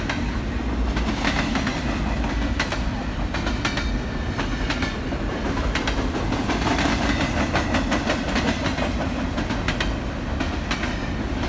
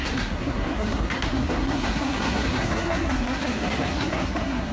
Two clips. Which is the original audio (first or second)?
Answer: first